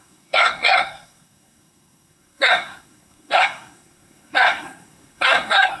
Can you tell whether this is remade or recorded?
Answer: remade